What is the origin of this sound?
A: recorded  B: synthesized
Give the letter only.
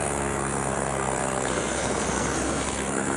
B